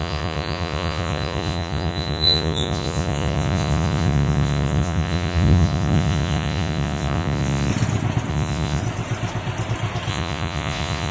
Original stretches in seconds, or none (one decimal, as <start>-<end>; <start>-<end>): 7.7-8.3; 8.8-10.1